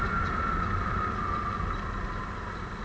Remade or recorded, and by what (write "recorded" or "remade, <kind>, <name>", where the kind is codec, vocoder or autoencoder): recorded